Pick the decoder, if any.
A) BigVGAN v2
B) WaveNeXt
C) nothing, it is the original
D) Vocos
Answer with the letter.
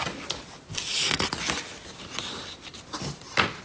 C